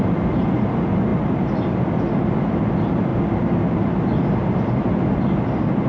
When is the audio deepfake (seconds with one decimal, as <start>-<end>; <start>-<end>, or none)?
none